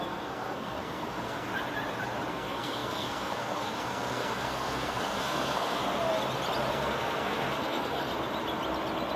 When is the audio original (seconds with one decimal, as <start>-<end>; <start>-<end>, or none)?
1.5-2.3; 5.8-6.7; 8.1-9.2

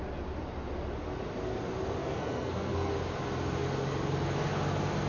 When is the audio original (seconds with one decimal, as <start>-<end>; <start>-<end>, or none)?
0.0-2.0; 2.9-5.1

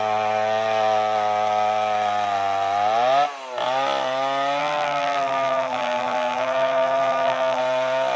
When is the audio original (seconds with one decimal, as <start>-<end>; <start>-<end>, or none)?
0.0-4.6; 7.6-8.2